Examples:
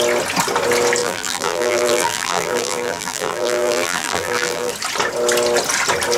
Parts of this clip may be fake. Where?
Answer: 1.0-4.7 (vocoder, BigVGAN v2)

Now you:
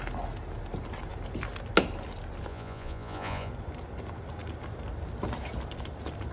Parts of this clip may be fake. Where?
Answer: 2.5-3.5 (vocoder, Vocos)

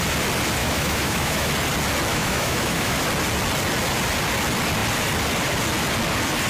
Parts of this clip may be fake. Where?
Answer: 0.6-1.5 (autoencoder, DAC-VAE); 2.1-3.0

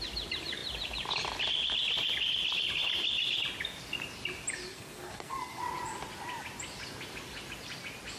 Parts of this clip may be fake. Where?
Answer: 4.7-5.6 (codec, SNAC)

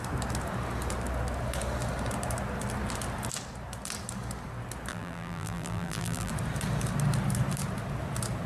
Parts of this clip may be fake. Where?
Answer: 4.9-6.3 (vocoder, BigVGAN v2)

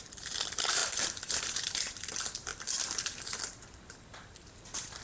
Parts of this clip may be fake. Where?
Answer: 0.0-2.5 (vocoder, BigVGAN v2); 3.4-5.0

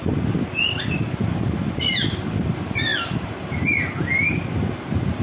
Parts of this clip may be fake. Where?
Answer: none